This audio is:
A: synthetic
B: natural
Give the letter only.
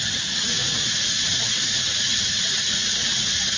A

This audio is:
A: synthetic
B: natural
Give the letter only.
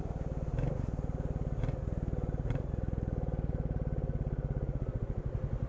B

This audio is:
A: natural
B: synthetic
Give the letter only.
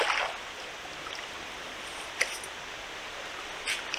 A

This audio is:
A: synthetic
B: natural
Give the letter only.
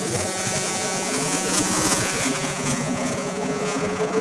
A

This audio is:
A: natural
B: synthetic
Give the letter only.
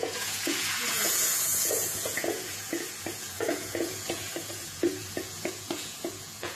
B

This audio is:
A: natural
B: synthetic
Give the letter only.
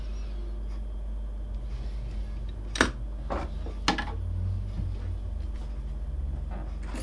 A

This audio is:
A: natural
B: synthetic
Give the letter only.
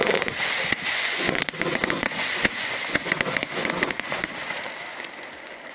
B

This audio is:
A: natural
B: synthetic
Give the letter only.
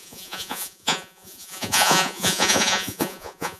B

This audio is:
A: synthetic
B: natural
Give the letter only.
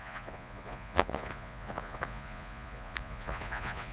A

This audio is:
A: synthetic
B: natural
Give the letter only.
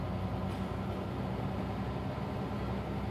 B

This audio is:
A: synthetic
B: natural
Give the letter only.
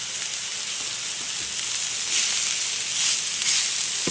B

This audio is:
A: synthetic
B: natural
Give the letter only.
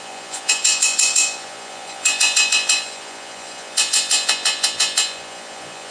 A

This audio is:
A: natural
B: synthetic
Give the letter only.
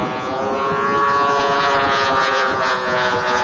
B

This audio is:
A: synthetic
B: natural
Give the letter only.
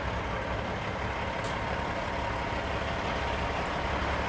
B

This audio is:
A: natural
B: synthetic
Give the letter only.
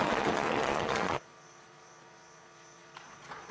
B